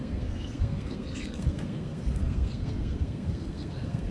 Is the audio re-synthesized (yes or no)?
yes